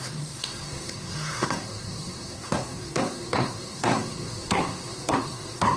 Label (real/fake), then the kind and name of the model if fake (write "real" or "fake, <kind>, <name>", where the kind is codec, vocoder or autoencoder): fake, codec, SNAC